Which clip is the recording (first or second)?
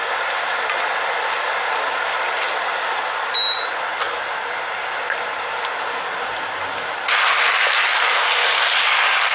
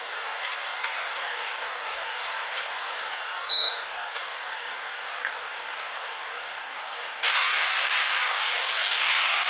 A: first